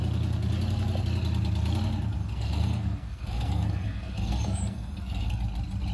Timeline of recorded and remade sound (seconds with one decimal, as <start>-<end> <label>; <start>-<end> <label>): 0.0-2.2 recorded; 2.2-5.4 remade; 5.4-5.9 recorded